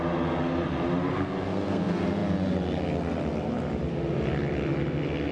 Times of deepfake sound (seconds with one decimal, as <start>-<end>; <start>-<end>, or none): 1.1-1.8